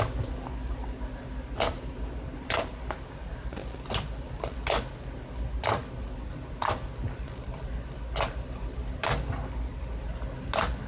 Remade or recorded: recorded